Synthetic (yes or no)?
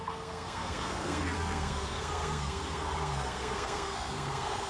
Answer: yes